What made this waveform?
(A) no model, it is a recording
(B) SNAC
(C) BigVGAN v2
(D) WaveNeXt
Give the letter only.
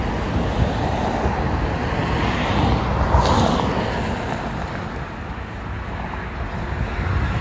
A